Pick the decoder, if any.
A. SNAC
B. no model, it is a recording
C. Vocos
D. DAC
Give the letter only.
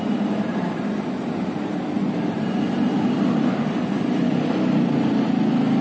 B